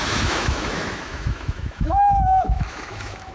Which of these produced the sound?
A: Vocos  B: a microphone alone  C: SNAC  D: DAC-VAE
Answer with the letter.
D